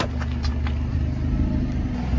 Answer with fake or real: real